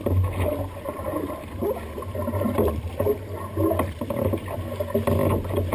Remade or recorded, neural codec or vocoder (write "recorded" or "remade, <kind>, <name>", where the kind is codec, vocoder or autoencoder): recorded